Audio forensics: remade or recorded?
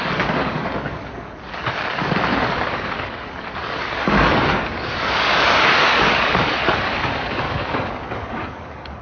remade